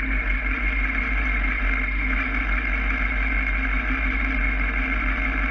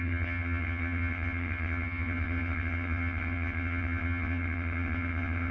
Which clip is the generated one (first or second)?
second